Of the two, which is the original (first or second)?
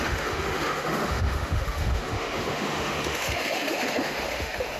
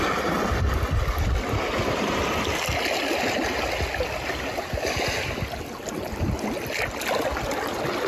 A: second